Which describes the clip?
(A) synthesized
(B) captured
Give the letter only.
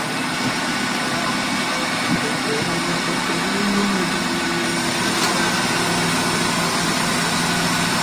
B